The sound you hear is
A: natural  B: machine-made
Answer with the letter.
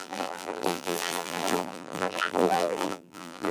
B